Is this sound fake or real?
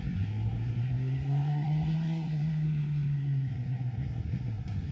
fake